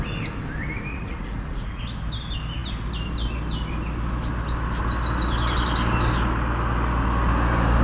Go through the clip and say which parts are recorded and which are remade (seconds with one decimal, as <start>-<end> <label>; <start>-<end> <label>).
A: 0.0-0.9 recorded; 0.9-1.8 remade; 1.8-7.8 recorded